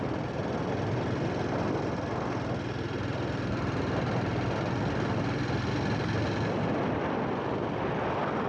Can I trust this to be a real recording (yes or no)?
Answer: yes